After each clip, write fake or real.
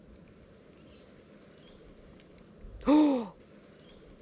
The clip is real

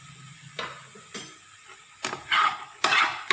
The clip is real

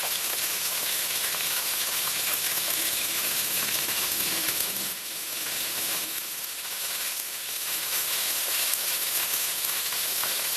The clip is fake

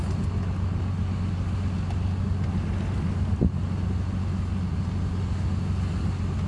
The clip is real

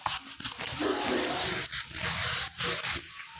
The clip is real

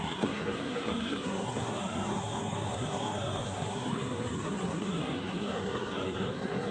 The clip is fake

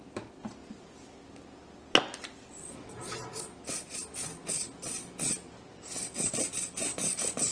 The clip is real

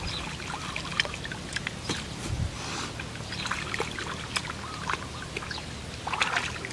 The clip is real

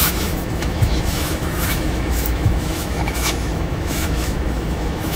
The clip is fake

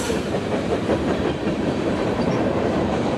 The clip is fake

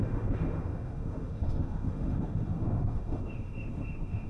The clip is fake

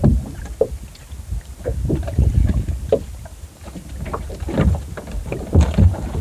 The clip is fake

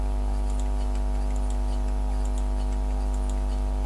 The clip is real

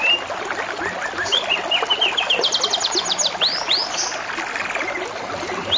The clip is real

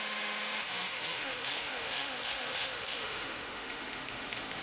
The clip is fake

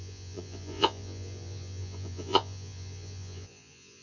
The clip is fake